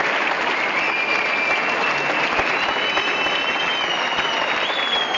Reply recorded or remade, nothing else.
recorded